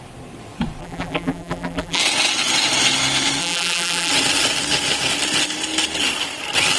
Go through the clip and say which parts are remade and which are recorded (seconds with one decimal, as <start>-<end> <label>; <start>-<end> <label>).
0.0-0.8 recorded; 0.8-2.0 remade; 2.0-3.4 recorded; 3.4-4.1 remade; 4.1-6.8 recorded